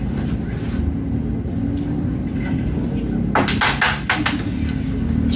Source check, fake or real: real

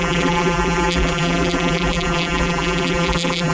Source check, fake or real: fake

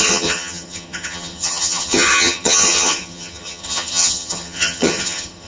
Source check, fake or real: fake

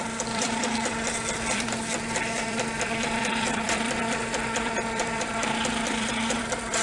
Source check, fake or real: fake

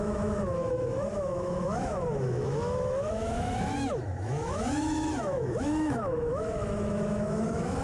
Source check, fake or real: fake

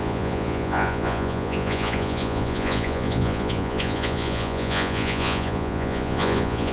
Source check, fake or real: fake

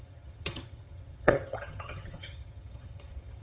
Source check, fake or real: fake